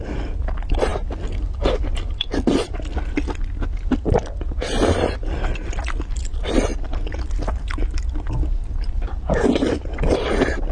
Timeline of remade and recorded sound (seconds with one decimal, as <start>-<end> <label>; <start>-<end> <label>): 0.0-10.7 recorded